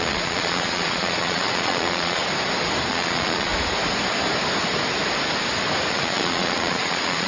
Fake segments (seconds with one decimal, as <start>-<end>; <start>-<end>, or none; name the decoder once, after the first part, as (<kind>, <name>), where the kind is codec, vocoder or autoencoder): 0.0-2.2 (vocoder, Vocos); 2.9-3.5; 5.9-7.3